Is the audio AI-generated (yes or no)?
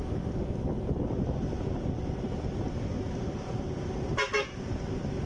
no